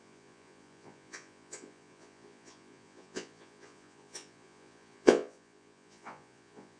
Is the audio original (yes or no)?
no